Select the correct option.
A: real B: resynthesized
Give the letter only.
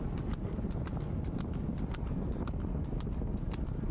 A